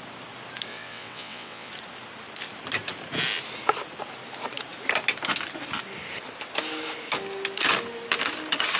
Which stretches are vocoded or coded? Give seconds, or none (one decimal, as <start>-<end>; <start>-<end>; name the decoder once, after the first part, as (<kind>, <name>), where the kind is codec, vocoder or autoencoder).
0.7-1.7 (vocoder, WaveNeXt)